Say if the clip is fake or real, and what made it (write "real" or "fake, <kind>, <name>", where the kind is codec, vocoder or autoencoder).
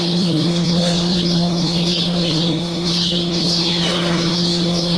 fake, codec, SNAC